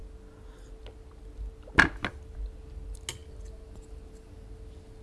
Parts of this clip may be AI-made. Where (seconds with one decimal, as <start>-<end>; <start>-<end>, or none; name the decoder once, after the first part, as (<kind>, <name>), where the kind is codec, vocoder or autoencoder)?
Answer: none